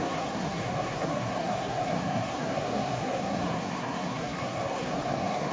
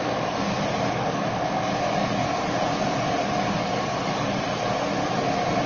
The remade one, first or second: first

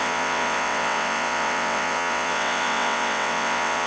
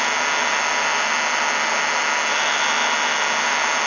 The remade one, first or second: first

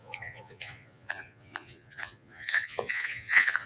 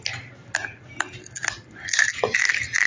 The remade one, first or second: first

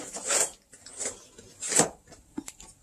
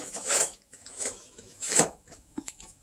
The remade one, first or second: second